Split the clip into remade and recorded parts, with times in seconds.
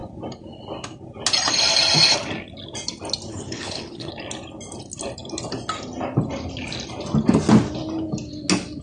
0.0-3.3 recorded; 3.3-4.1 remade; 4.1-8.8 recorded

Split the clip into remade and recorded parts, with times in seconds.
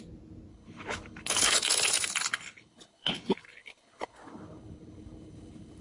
0.0-0.5 recorded; 0.5-1.6 remade; 1.6-2.3 recorded; 2.3-5.8 remade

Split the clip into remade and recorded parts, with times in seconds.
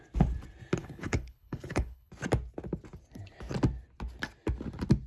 0.0-0.8 recorded; 0.8-2.1 remade; 2.1-5.1 recorded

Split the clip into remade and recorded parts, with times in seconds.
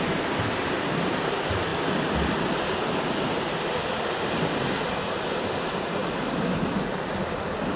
0.0-7.8 recorded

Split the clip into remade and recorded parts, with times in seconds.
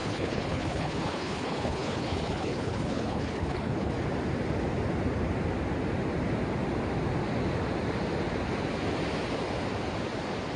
0.0-3.9 remade; 3.9-10.6 recorded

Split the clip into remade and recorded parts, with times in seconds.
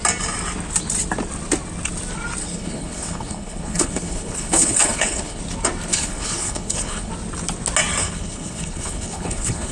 0.0-2.4 recorded; 2.4-5.4 remade; 5.4-5.9 recorded; 5.9-7.1 remade; 7.1-8.0 recorded; 8.0-9.7 remade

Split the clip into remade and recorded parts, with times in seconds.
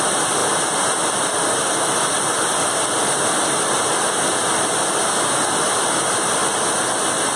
0.0-7.4 recorded